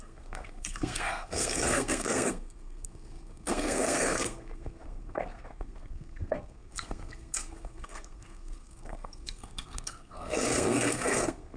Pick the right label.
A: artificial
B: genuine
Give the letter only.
A